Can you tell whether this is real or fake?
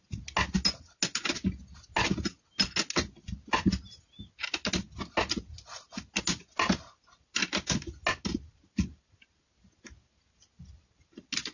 real